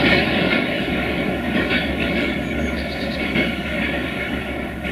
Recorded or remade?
remade